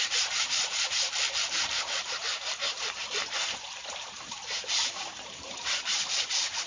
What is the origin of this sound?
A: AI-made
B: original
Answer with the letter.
A